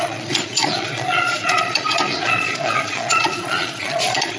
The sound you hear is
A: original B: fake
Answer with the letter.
B